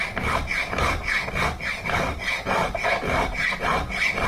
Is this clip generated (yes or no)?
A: no